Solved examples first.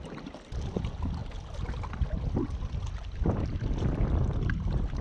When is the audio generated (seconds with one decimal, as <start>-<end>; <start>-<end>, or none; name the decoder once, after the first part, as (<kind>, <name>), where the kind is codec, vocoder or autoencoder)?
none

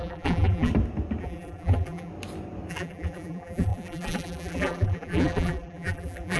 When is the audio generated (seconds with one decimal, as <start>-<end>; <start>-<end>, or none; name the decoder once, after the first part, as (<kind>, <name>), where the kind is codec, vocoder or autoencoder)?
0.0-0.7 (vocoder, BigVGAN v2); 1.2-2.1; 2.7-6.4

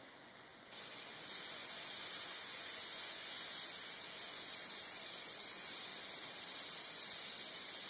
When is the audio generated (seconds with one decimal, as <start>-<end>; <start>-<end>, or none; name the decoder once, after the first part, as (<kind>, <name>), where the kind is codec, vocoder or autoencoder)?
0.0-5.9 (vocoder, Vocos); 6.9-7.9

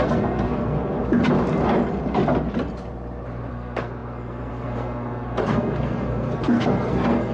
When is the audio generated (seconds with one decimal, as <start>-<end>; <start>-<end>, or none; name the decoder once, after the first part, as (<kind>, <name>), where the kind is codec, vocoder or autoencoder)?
0.0-1.0 (codec, SNAC); 3.5-7.3

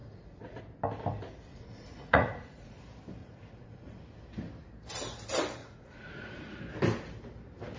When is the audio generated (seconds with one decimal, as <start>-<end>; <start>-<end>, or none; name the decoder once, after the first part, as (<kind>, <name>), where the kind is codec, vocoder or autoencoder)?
0.0-0.6 (vocoder, Vocos); 1.5-2.8; 3.2-4.0; 5.6-6.6